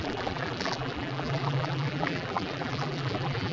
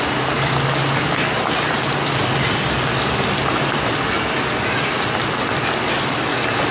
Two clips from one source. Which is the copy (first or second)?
first